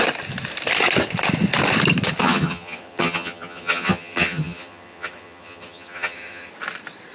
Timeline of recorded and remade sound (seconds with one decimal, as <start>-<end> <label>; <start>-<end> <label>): 0.0-2.2 recorded; 2.2-6.5 remade; 6.5-7.1 recorded